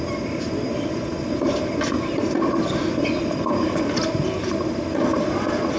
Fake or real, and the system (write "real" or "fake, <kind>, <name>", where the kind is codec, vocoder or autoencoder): real